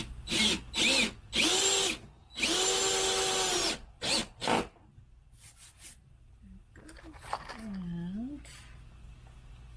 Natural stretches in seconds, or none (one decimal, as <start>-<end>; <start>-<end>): 0.0-9.8